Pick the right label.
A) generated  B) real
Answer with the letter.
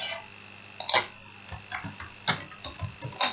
B